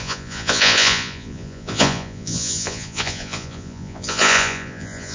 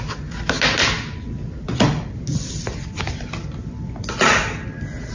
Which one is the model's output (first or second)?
first